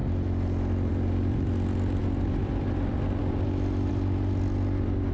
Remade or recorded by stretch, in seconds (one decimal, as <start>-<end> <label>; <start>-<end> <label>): 0.0-5.1 recorded